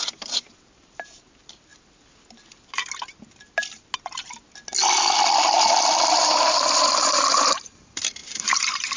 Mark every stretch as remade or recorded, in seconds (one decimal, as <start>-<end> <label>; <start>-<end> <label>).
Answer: 0.0-1.7 remade; 1.7-6.1 recorded; 6.1-9.0 remade